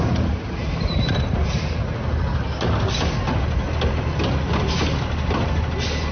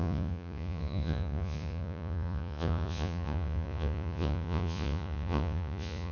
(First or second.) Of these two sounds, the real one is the first